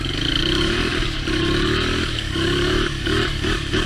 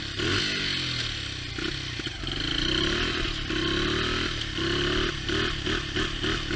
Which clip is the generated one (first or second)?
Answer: first